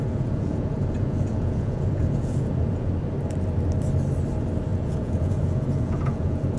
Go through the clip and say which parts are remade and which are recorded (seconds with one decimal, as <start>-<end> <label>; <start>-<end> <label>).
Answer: 0.0-2.9 remade; 2.9-4.7 recorded; 4.7-6.6 remade